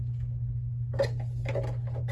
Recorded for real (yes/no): yes